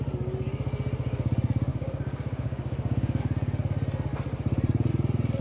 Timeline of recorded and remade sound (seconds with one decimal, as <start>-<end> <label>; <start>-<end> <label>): 0.0-1.7 recorded; 1.7-3.2 remade; 3.2-5.4 recorded